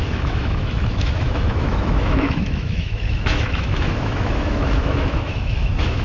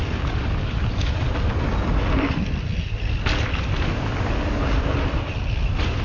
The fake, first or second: first